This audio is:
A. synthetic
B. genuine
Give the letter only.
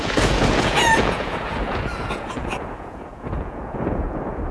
A